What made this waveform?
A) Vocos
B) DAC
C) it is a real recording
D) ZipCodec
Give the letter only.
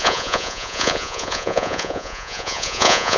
A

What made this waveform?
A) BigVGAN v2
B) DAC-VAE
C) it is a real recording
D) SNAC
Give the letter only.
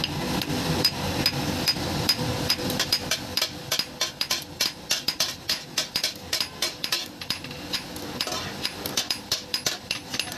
C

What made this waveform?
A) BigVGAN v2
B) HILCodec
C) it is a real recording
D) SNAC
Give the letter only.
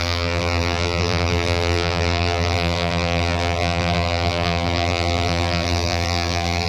A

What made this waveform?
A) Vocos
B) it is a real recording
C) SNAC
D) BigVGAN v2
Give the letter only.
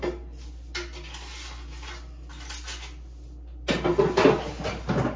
B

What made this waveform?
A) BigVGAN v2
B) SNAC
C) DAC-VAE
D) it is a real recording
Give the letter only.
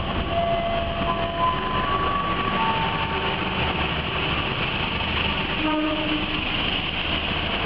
D